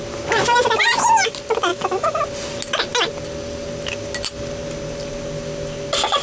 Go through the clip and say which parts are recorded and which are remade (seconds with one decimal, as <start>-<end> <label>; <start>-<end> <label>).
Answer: 0.0-1.7 recorded; 1.7-2.2 remade; 2.2-6.2 recorded